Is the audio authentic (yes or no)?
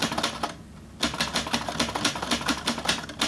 yes